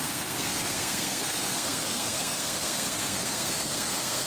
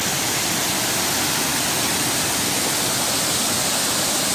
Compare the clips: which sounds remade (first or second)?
first